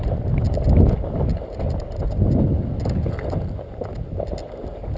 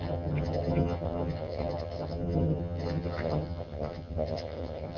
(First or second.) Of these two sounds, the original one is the first